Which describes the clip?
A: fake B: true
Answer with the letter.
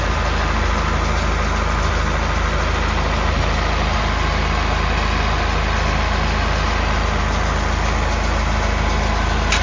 B